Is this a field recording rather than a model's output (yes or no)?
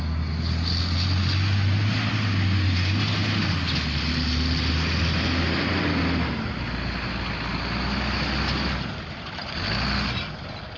yes